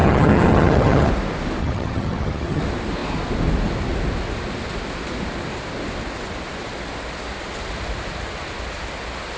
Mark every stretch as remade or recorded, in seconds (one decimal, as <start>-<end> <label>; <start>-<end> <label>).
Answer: 0.0-1.1 remade; 1.1-1.6 recorded; 1.6-2.6 remade; 2.6-9.4 recorded